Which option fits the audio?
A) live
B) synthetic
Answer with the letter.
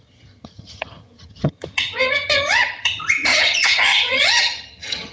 B